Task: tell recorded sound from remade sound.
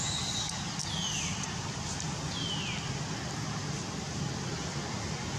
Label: recorded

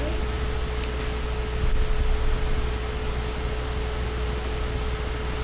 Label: recorded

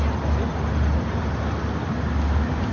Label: recorded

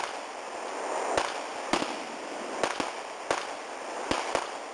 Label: recorded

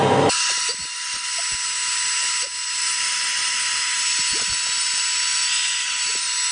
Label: recorded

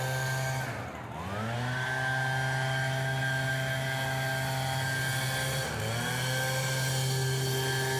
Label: recorded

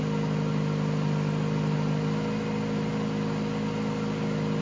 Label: recorded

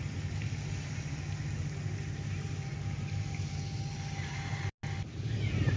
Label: recorded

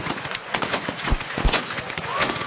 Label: remade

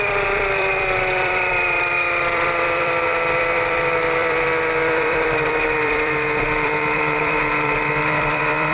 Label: remade